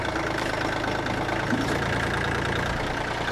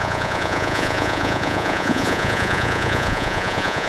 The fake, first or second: second